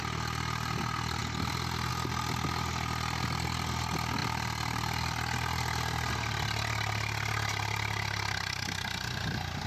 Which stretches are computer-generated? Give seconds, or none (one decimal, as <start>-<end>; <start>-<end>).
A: none